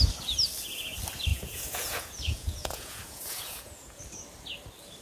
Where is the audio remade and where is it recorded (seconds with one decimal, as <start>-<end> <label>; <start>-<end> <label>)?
0.0-1.3 recorded; 1.3-4.0 remade; 4.0-5.0 recorded